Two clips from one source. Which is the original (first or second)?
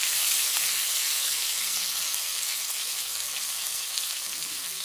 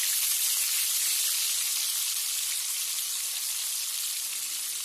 second